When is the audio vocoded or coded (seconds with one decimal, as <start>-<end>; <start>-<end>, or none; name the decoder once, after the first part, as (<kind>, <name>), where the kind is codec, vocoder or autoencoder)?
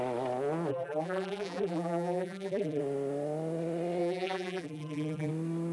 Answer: 0.7-2.8 (vocoder, BigVGAN v2); 4.0-5.3